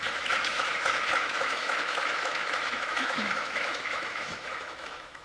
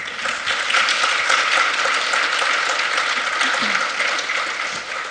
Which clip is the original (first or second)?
second